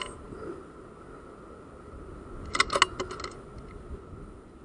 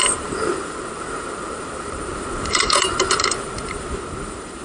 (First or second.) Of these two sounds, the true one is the first